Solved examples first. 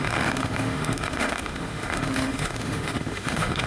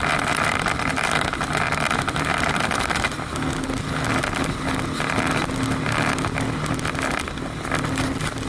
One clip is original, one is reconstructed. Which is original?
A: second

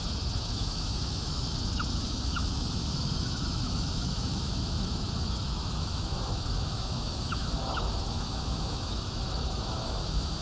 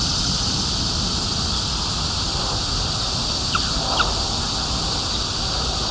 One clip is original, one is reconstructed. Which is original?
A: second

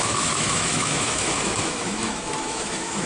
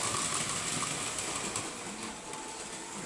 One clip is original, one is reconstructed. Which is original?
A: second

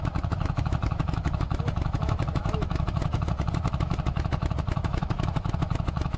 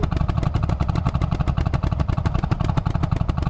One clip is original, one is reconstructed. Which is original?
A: second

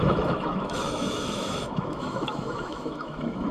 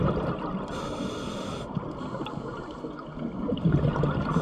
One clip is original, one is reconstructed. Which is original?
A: second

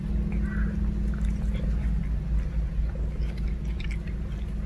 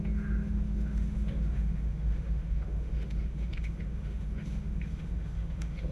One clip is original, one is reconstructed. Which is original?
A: first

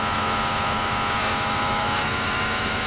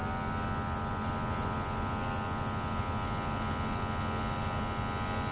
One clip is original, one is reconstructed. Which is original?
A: second